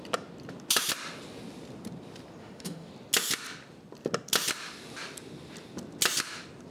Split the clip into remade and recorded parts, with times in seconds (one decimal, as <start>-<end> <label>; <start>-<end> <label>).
0.0-2.4 recorded; 2.4-2.9 remade; 2.9-6.7 recorded